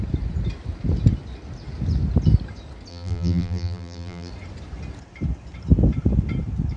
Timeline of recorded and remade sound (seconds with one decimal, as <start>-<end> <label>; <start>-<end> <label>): 0.0-2.9 recorded; 2.9-4.3 remade; 4.3-6.8 recorded